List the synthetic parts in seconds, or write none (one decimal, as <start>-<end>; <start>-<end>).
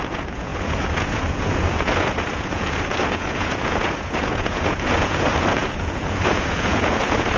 0.0-7.4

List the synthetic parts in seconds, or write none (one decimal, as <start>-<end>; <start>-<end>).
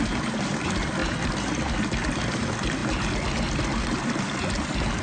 none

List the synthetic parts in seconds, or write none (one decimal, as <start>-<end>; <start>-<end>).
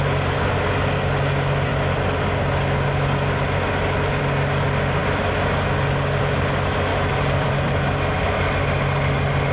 6.9-7.5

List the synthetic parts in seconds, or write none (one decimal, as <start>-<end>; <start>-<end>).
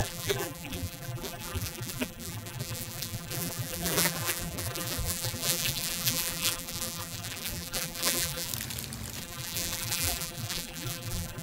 0.0-8.5; 9.2-11.4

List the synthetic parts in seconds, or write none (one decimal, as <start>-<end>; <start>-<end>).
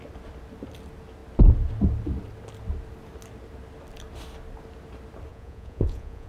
5.3-6.3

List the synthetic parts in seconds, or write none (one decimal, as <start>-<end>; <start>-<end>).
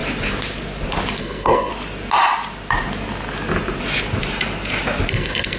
1.2-1.7; 5.1-5.6